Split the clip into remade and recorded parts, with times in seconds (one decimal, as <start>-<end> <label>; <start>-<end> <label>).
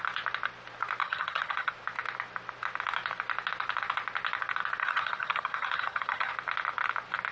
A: 0.0-1.0 recorded; 1.0-1.7 remade; 1.7-4.8 recorded; 4.8-6.3 remade; 6.3-7.3 recorded